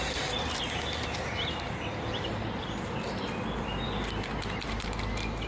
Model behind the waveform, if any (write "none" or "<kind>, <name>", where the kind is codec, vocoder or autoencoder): none